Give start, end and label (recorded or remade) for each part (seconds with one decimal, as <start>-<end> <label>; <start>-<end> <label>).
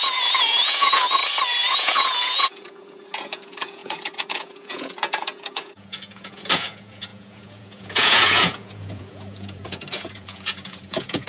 0.0-1.2 remade; 1.2-1.7 recorded; 1.7-11.3 remade